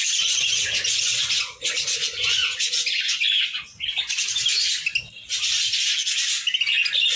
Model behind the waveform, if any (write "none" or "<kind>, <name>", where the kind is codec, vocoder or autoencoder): none